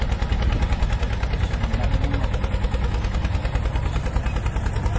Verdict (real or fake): real